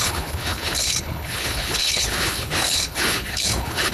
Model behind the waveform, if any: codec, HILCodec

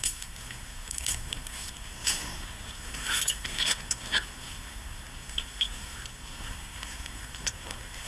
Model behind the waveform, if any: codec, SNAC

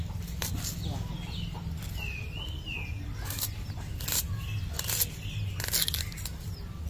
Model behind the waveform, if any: none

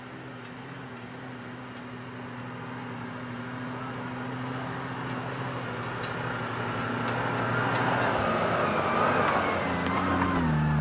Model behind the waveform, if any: none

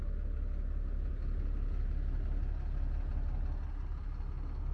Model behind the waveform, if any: none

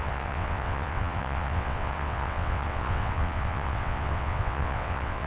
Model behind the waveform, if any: vocoder, WaveNeXt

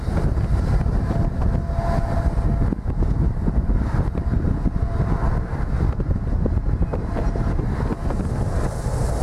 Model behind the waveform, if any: none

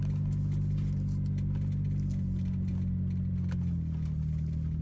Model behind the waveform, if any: none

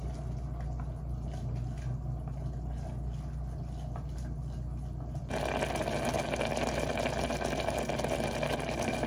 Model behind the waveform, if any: none